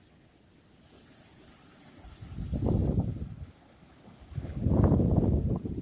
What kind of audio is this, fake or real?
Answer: real